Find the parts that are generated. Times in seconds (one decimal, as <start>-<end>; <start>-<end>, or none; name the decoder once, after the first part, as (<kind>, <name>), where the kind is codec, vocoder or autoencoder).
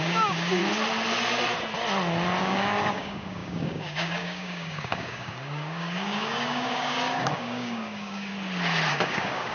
0.0-0.6 (codec, DAC); 2.4-8.3; 8.9-9.5